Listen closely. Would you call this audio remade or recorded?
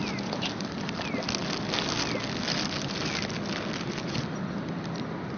recorded